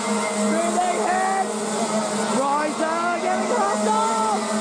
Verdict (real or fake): real